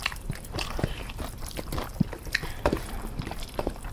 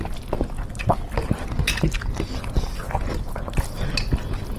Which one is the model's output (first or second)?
first